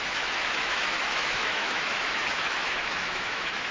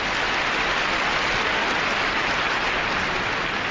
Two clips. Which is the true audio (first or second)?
second